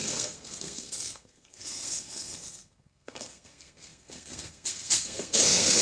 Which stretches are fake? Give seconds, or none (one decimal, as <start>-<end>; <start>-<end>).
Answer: 0.0-5.8